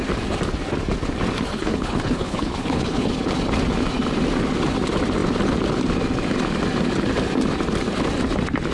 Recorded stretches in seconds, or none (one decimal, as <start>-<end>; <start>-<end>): 0.0-1.5; 3.1-8.7